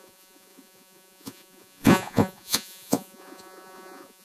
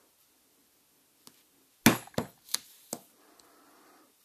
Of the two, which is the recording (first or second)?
second